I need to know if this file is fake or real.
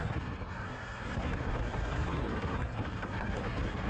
fake